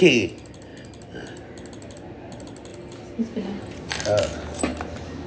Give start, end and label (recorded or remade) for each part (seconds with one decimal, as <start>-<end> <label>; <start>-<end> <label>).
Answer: 0.0-5.3 recorded